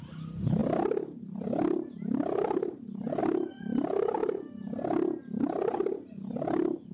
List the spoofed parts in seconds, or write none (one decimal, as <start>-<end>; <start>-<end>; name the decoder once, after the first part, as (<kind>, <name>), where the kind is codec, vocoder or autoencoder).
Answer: none